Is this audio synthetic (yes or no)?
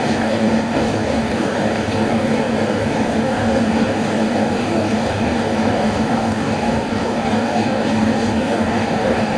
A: yes